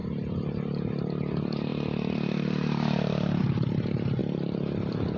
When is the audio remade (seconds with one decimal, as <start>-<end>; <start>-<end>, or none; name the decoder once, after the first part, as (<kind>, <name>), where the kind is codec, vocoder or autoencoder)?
0.0-5.2 (vocoder, BigVGAN v2)